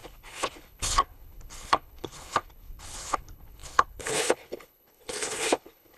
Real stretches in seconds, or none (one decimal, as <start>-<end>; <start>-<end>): none